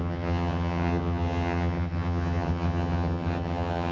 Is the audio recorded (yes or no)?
no